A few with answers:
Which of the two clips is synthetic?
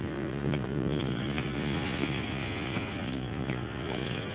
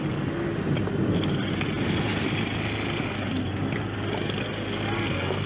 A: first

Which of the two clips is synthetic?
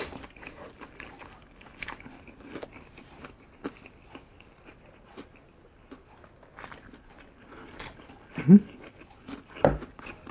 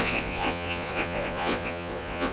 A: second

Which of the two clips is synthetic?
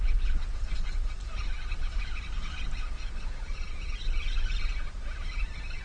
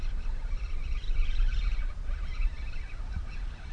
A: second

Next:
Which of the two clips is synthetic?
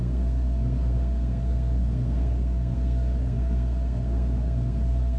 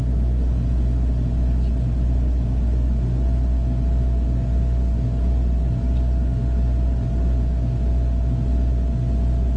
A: first